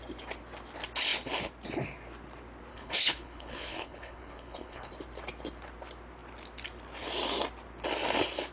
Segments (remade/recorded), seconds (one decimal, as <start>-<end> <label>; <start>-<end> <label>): 0.0-2.7 recorded; 2.7-4.9 remade; 4.9-8.5 recorded